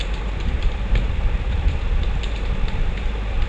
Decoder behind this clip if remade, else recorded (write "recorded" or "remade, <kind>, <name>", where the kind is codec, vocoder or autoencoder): remade, vocoder, BigVGAN v2